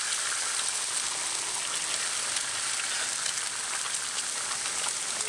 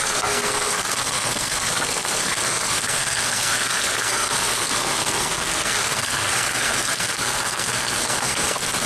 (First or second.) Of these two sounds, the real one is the first